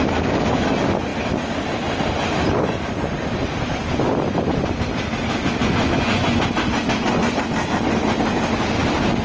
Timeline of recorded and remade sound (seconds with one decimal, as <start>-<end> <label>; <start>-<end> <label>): 0.0-5.6 recorded; 5.6-6.4 remade; 6.4-9.2 recorded

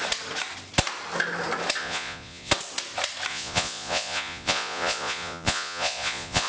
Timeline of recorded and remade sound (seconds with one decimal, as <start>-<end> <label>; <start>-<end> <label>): 0.0-1.8 recorded; 1.8-2.5 remade; 2.5-3.3 recorded; 3.3-6.5 remade